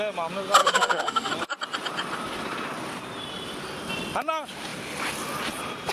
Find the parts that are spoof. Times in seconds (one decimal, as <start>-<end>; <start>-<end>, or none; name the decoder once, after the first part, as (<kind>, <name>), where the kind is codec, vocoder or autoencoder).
0.6-1.3 (autoencoder, DAC-VAE)